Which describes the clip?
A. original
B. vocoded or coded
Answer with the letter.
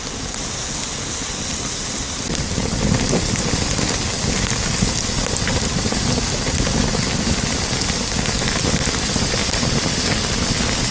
A